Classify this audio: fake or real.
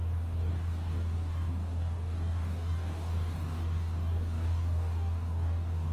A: fake